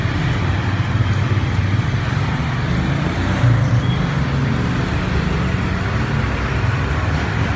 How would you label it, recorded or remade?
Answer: recorded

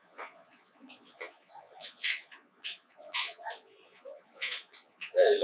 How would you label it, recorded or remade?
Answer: remade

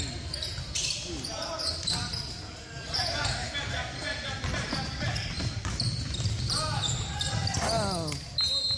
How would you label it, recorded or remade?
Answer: recorded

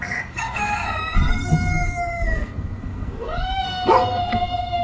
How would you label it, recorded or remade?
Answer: remade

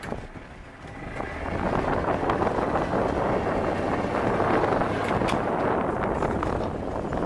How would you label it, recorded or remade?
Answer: recorded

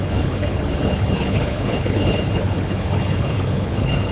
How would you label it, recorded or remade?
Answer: remade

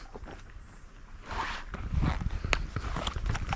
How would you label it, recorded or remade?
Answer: recorded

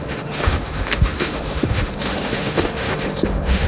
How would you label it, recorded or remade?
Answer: remade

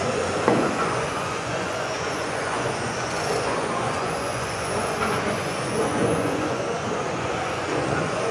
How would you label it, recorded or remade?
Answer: remade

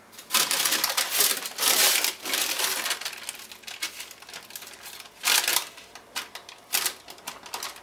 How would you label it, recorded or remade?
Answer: recorded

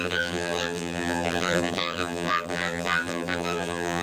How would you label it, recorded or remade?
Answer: remade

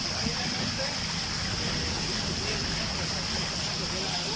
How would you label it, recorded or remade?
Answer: recorded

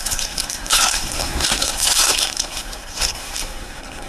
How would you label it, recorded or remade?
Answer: remade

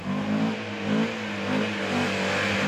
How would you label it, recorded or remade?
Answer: recorded